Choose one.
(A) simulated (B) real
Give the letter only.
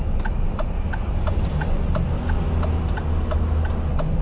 B